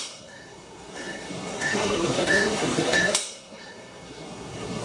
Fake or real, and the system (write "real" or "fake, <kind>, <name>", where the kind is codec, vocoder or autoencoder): fake, codec, SNAC